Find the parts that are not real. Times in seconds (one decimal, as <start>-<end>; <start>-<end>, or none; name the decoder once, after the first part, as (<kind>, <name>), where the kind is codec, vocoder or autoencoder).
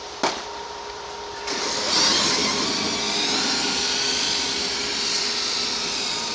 0.0-2.4 (vocoder, BigVGAN v2); 4.1-6.3